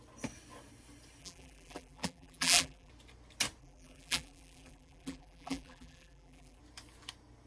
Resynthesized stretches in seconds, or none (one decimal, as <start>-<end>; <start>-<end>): 1.2-2.9; 3.6-6.6